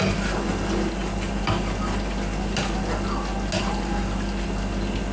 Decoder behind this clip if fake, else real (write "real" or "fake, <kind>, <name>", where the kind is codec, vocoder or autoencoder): real